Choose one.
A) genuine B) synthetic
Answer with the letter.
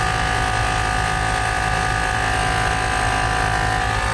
A